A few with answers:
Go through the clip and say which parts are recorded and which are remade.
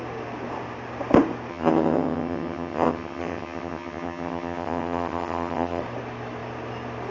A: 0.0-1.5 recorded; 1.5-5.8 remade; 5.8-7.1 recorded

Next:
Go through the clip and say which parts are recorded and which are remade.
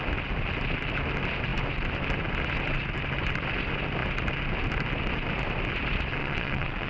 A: 0.0-6.2 recorded; 6.2-6.9 remade